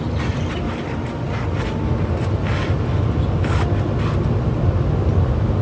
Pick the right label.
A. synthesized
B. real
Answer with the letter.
B